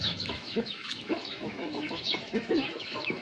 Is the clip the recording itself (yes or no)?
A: no